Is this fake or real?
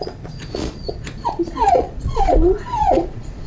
fake